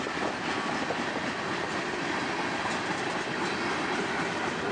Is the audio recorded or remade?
recorded